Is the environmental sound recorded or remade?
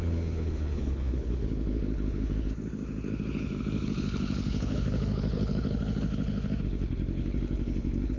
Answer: remade